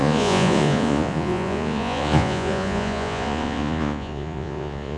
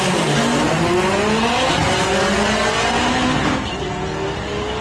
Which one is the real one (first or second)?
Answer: second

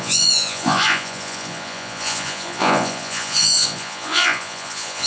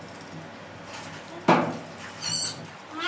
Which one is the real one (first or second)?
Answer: second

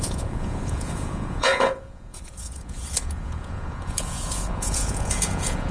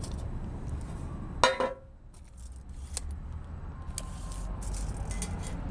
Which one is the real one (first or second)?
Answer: second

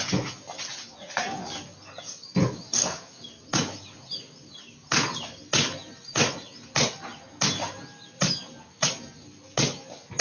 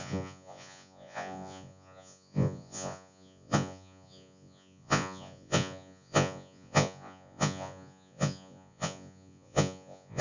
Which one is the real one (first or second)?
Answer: first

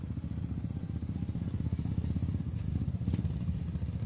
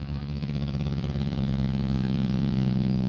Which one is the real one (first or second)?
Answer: first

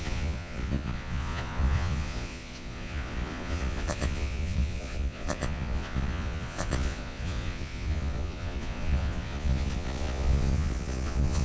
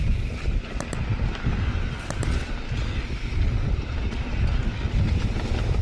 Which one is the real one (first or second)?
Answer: second